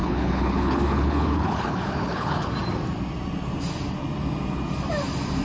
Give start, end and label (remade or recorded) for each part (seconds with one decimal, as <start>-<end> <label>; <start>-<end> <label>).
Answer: 0.0-2.5 remade; 2.5-5.4 recorded